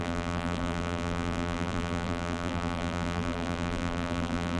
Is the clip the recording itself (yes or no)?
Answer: no